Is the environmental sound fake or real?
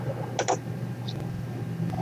real